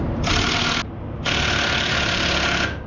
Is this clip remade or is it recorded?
recorded